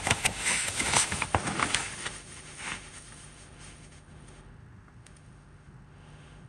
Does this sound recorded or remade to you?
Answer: remade